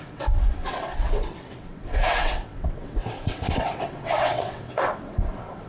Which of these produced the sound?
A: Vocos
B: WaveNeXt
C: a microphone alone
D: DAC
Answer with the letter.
B